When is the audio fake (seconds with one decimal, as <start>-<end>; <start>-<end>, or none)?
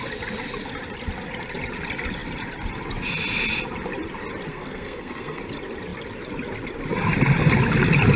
4.5-5.4